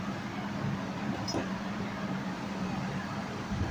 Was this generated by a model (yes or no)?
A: no